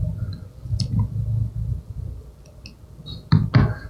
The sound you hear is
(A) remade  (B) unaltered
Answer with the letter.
B